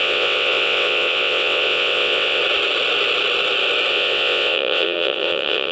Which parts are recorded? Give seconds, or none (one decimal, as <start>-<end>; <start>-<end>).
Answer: 2.4-3.9